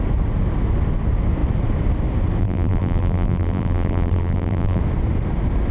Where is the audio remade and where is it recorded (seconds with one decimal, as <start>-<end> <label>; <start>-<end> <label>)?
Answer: 0.0-2.4 recorded; 2.4-4.8 remade; 4.8-5.7 recorded